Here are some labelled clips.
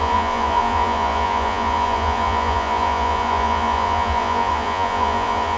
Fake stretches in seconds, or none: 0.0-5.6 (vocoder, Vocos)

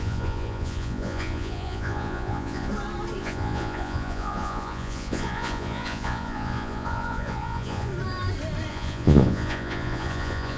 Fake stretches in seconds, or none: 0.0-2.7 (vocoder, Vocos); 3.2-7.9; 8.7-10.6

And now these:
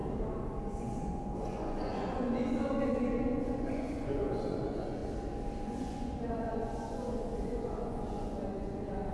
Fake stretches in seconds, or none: 0.8-5.0 (vocoder, Vocos); 5.6-9.1

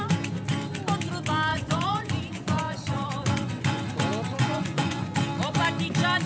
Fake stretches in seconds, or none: 1.5-3.9 (vocoder, Vocos); 4.3-5.1